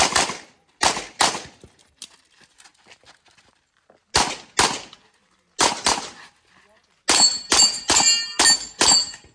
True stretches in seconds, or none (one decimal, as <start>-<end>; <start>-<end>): 0.0-9.3